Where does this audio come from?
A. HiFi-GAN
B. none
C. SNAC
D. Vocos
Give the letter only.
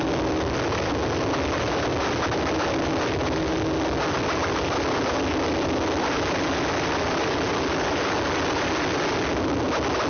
B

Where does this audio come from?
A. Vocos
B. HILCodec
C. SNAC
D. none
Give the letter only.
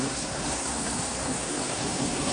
C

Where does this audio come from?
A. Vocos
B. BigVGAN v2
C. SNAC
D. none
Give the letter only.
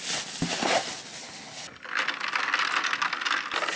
D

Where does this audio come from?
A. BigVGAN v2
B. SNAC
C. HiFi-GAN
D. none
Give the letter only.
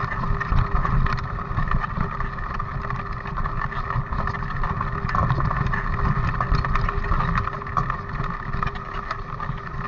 D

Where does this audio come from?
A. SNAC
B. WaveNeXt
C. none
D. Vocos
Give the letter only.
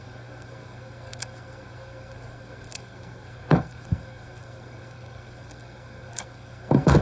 A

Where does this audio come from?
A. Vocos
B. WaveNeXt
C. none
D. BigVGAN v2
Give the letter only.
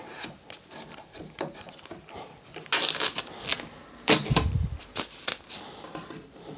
C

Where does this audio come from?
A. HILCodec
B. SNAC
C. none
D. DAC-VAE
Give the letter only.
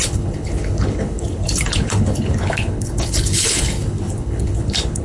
A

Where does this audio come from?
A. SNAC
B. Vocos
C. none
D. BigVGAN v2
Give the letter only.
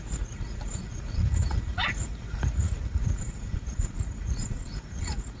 B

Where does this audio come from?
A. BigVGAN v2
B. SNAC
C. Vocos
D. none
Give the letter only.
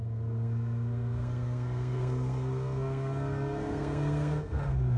B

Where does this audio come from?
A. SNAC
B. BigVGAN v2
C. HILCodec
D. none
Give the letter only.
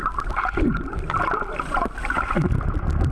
D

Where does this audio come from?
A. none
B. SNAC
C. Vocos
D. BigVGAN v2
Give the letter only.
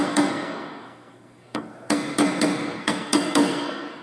B